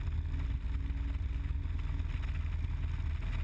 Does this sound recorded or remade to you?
recorded